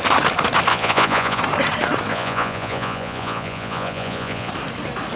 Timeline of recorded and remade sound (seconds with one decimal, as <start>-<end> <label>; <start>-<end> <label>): 0.0-0.7 recorded; 0.7-1.4 remade; 1.4-2.1 recorded; 2.1-4.5 remade; 4.5-5.2 recorded